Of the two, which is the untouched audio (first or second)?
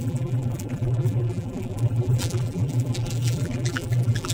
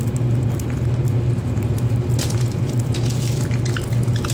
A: second